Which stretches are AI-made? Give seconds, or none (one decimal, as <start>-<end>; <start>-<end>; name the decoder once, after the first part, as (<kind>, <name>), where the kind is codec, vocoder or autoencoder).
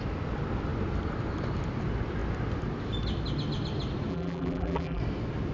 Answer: 4.1-5.0 (vocoder, BigVGAN v2)